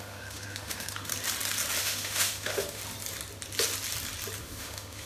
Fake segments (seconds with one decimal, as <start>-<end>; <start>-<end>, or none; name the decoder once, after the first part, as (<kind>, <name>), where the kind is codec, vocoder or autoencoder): 0.0-1.1 (autoencoder, DAC-VAE); 1.8-2.8; 4.4-5.1